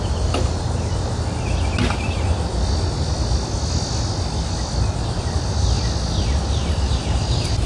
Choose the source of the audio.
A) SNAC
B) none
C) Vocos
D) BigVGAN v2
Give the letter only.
B